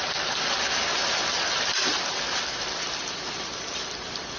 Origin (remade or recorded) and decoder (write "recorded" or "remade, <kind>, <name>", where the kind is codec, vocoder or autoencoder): recorded